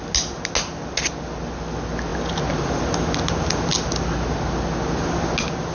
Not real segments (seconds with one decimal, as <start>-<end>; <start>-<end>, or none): none